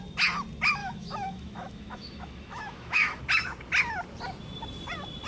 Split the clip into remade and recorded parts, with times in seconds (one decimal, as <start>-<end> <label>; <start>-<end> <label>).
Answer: 0.0-0.8 recorded; 0.8-3.2 remade; 3.2-5.3 recorded